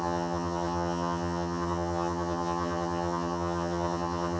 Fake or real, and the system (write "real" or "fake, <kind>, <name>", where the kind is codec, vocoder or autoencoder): fake, vocoder, HiFi-GAN